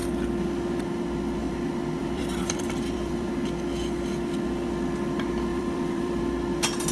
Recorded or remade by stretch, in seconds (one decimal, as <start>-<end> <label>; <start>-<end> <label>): 0.0-2.0 recorded; 2.0-3.3 remade; 3.3-5.5 recorded; 5.5-6.2 remade; 6.2-6.9 recorded